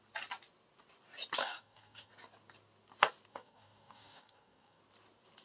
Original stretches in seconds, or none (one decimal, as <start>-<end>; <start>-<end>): 0.0-1.4; 2.1-3.3; 4.8-5.4